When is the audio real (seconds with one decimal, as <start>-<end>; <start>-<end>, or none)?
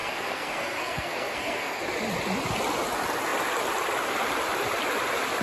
1.8-5.4